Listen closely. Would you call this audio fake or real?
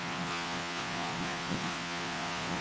fake